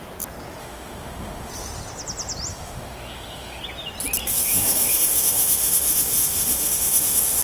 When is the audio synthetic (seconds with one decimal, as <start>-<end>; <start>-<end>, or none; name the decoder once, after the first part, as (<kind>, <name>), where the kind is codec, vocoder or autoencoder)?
0.6-1.5 (autoencoder, DAC-VAE); 2.5-3.6; 4.2-7.4